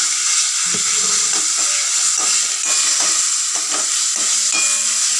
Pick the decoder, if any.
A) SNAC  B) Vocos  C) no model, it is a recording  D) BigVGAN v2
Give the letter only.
C